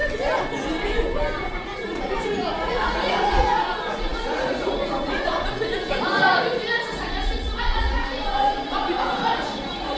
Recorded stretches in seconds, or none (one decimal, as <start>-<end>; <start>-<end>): 0.0-1.5